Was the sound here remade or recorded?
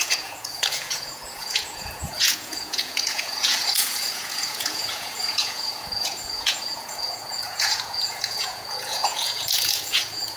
remade